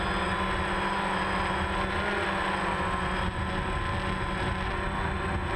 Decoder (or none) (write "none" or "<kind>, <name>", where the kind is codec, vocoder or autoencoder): none